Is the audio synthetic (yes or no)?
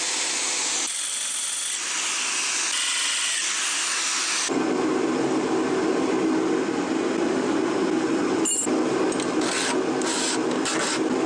no